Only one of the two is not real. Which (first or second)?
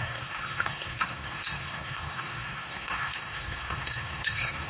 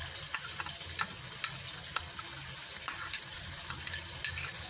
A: first